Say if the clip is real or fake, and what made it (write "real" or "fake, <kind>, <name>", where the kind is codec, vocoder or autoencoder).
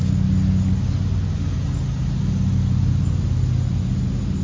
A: real